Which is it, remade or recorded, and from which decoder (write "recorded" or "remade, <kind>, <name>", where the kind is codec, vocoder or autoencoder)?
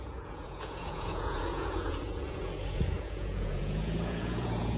remade, vocoder, Vocos